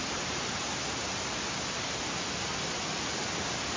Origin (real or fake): real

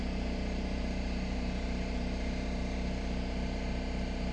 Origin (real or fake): real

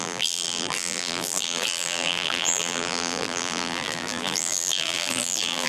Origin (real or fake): fake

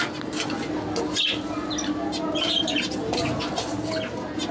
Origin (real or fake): real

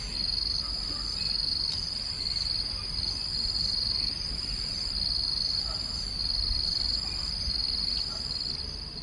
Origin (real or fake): real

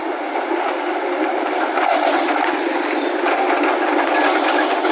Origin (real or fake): real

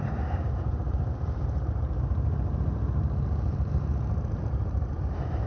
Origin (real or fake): fake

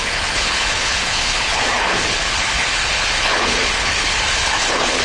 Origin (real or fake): fake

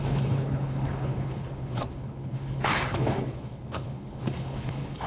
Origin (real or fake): fake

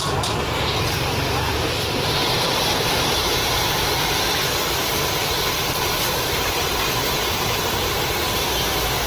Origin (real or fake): fake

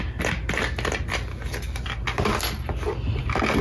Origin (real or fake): real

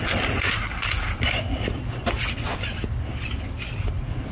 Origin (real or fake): real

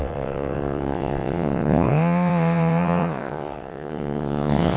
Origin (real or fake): fake